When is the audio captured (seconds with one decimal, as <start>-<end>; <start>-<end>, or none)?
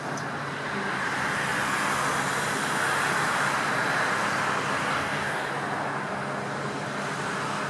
0.0-4.9; 5.5-7.7